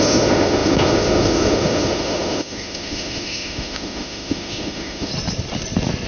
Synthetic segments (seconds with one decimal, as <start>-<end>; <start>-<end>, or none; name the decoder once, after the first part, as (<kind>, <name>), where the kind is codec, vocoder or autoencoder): 0.0-5.1 (autoencoder, DAC-VAE)